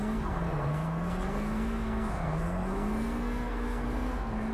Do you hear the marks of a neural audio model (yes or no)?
yes